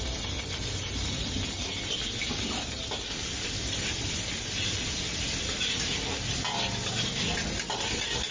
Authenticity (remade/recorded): recorded